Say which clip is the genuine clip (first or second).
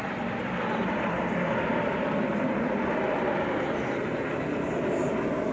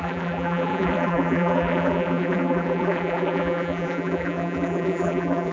first